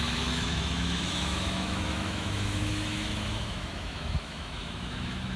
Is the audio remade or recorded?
remade